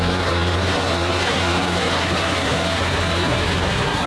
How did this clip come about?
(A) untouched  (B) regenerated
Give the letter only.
B